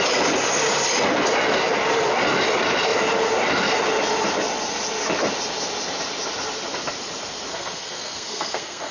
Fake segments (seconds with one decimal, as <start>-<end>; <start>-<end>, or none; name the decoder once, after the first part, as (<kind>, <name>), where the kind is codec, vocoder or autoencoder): 7.5-8.9 (codec, SNAC)